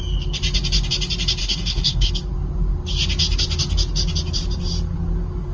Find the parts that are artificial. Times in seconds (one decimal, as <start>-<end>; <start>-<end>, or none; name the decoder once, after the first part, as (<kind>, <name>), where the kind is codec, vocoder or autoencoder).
1.4-2.1 (codec, SNAC)